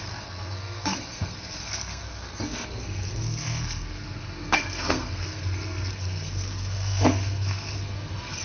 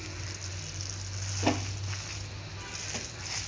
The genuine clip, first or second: second